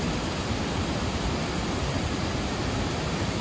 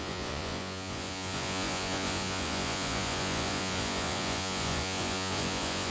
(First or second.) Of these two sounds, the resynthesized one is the second